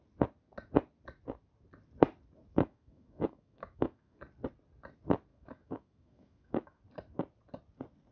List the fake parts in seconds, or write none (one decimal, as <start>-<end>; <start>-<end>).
2.5-4.2; 5.3-6.8